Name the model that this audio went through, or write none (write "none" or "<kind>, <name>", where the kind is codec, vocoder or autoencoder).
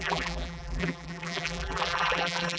vocoder, BigVGAN v2